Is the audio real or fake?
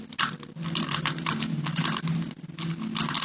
real